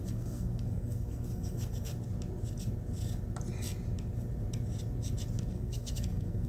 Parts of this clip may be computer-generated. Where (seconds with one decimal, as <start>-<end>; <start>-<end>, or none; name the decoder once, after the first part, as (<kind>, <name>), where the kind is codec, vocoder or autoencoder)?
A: 0.0-1.9 (codec, SNAC); 5.5-6.5